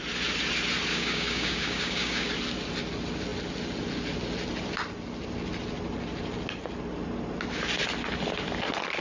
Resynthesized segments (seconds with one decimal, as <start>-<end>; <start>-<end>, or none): 0.9-2.3